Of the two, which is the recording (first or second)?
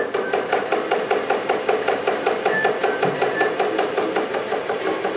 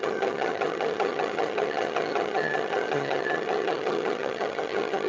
first